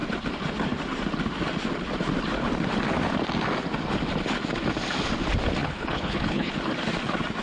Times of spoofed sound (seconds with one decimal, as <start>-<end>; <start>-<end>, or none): 5.6-6.5